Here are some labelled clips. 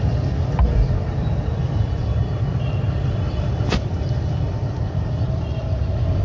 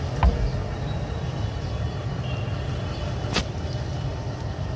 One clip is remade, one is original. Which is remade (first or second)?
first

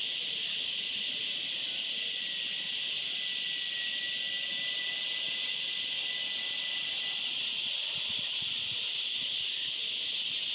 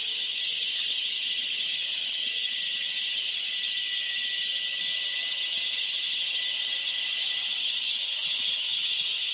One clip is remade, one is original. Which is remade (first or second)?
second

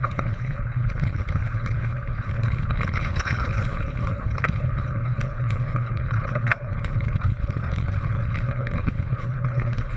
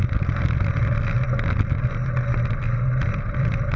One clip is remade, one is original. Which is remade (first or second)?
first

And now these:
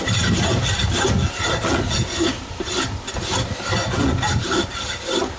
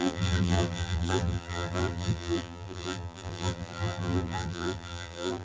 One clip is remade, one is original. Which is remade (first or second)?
second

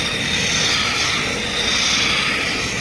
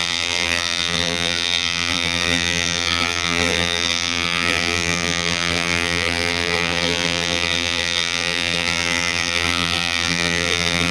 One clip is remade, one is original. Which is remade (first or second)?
second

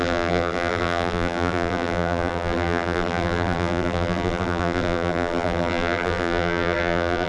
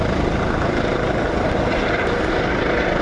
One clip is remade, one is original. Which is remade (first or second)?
first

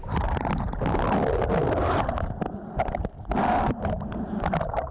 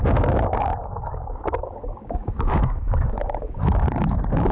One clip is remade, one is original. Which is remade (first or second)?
second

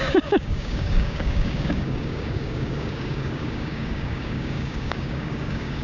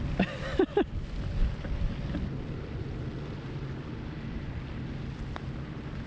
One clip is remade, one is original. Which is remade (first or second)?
first